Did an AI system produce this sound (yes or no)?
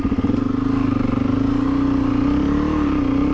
no